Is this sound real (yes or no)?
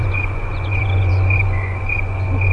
no